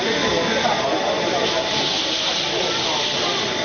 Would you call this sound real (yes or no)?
yes